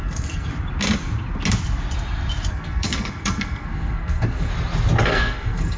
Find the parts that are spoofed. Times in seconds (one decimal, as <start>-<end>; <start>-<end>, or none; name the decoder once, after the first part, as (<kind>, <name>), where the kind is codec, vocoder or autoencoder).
0.0-0.5 (codec, SNAC); 2.5-4.5; 5.0-5.8